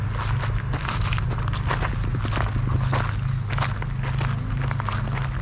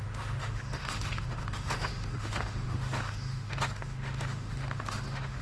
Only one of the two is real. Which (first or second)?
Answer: first